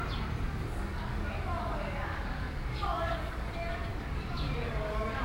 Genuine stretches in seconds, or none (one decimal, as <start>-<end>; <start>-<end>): 0.0-0.9; 3.5-3.9